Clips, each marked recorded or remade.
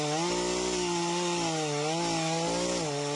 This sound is recorded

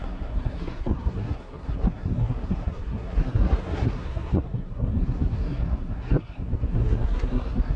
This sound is remade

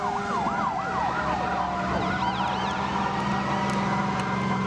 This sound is recorded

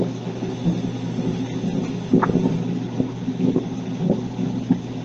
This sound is recorded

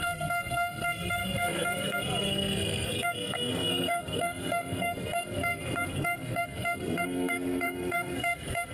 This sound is remade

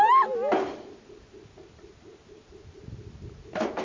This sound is recorded